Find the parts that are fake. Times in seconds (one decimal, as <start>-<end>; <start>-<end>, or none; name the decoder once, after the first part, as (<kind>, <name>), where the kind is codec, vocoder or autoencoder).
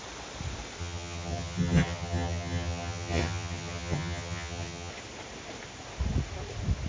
0.8-4.9 (vocoder, HiFi-GAN)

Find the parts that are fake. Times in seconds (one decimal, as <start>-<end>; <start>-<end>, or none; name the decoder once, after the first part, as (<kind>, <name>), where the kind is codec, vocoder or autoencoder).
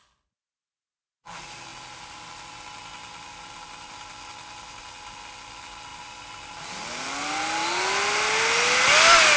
none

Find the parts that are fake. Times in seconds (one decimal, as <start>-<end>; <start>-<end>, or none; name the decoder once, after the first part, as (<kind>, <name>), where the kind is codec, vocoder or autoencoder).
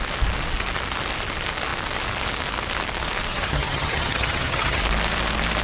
3.3-4.8 (vocoder, HiFi-GAN)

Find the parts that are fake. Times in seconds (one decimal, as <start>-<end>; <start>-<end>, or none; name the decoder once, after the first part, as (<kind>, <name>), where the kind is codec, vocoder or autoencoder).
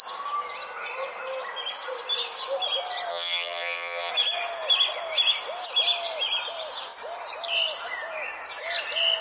3.1-4.1 (vocoder, HiFi-GAN)